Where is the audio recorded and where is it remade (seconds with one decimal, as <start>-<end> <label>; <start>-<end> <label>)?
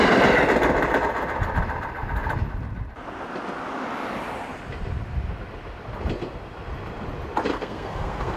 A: 0.0-7.5 recorded; 7.5-8.4 remade